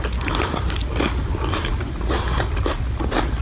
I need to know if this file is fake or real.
real